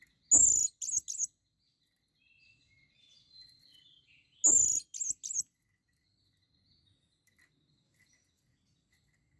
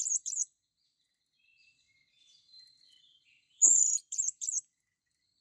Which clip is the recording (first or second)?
first